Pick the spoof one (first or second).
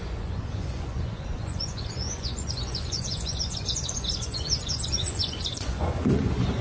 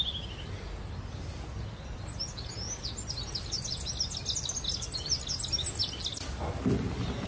first